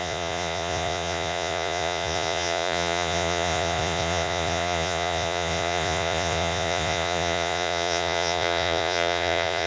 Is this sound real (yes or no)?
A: no